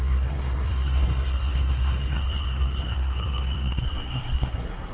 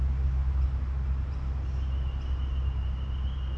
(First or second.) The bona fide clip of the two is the second